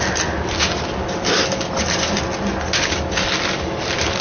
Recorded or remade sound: recorded